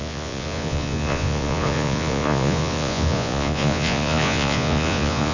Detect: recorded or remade remade